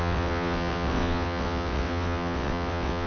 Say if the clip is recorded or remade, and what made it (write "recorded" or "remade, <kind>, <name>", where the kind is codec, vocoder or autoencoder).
remade, vocoder, WaveNeXt